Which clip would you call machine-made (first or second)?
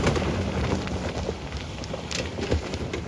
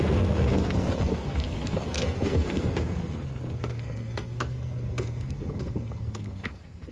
second